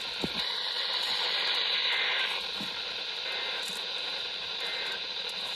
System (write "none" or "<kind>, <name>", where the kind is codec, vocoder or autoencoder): none